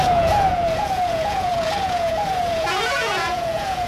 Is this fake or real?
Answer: fake